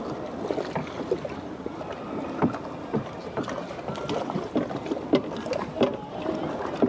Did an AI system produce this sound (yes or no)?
no